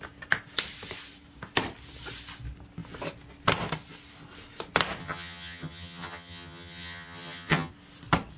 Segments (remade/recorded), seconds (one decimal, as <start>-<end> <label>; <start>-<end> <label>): 0.0-5.0 recorded; 5.0-7.7 remade; 7.7-8.4 recorded